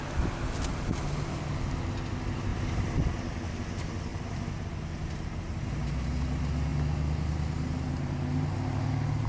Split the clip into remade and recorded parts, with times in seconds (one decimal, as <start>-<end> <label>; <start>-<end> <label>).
0.0-2.5 recorded; 2.5-3.0 remade; 3.0-4.1 recorded; 4.1-4.8 remade; 4.8-9.3 recorded

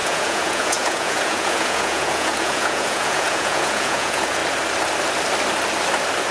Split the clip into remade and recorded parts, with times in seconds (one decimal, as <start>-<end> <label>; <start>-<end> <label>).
0.0-4.4 remade; 4.4-6.3 recorded